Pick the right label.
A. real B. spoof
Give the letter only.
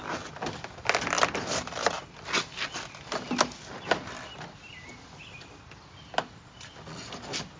A